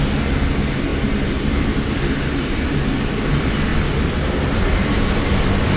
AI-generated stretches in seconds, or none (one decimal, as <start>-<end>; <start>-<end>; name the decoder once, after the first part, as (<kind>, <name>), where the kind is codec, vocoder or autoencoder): none